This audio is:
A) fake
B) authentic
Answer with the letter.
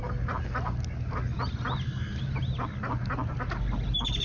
B